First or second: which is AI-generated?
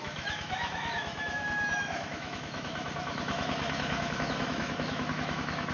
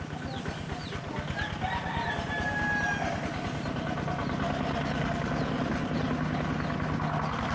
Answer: first